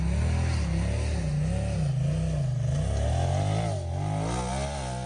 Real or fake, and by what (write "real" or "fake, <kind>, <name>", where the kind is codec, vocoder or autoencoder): real